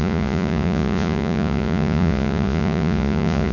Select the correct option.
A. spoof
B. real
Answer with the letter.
A